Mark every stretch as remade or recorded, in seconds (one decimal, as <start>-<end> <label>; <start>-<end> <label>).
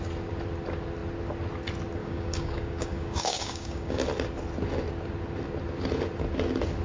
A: 0.0-2.0 recorded; 2.0-4.0 remade; 4.0-6.8 recorded